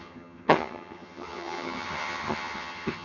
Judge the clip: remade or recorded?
remade